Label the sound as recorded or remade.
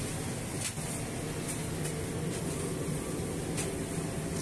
recorded